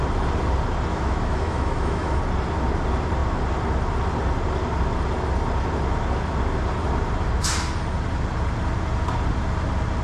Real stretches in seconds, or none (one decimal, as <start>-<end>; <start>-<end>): 0.0-0.9; 2.2-10.0